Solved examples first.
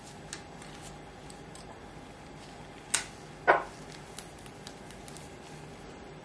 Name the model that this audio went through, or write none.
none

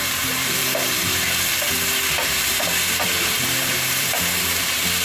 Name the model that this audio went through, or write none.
vocoder, BigVGAN v2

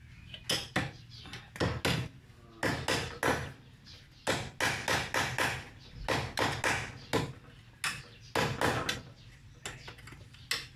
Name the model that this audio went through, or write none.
none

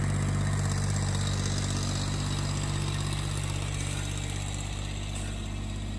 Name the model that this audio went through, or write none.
none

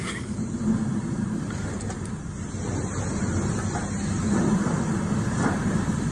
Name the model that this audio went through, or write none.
none